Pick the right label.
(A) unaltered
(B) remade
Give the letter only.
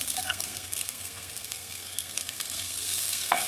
B